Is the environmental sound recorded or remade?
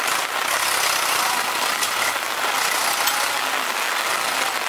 recorded